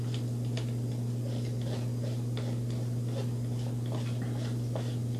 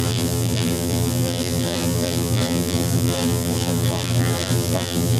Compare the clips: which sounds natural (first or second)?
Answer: first